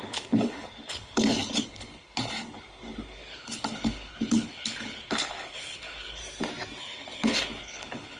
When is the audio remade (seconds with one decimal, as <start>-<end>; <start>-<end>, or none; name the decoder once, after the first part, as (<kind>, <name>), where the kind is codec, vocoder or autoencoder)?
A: 0.0-6.2 (codec, HILCodec); 6.8-8.2